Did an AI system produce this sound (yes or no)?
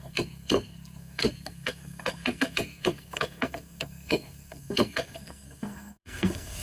yes